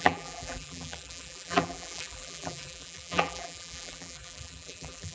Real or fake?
fake